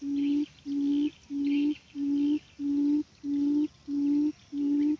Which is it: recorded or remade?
recorded